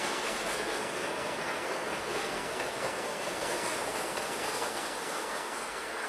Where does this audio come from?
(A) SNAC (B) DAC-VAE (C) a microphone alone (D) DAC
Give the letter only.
A